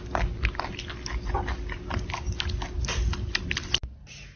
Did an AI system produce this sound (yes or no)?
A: no